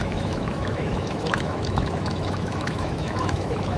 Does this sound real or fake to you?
fake